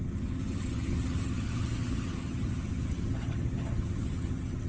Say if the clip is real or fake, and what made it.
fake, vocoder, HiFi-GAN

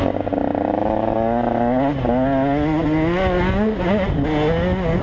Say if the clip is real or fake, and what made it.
real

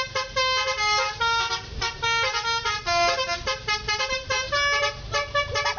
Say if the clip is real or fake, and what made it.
real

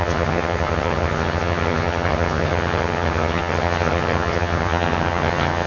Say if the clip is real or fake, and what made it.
fake, vocoder, HiFi-GAN